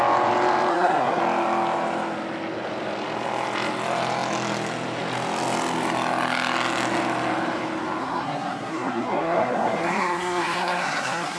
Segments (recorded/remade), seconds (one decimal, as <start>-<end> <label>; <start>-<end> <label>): 0.0-0.7 recorded; 0.7-1.2 remade; 1.2-8.0 recorded; 8.0-11.4 remade